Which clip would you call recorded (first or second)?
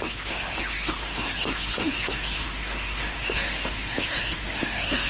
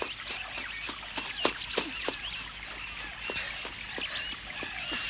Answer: second